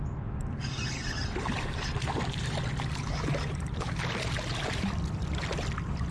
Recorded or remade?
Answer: recorded